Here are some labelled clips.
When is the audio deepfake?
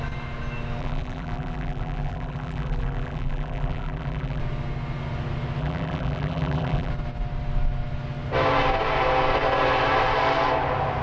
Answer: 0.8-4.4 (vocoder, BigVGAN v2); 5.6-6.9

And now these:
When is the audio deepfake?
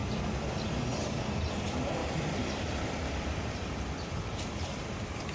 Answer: 1.5-2.0 (vocoder, BigVGAN v2); 3.5-5.3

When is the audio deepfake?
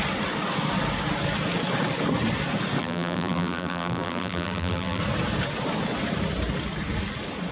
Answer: 2.8-5.0 (vocoder, BigVGAN v2)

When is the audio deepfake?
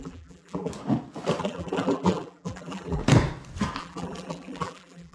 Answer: 0.0-0.7 (vocoder, BigVGAN v2); 1.4-3.0; 3.8-5.1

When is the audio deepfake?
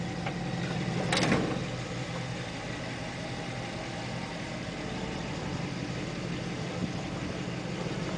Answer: none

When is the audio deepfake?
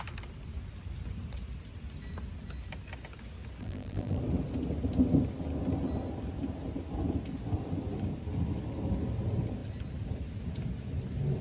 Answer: 3.6-4.2 (vocoder, BigVGAN v2)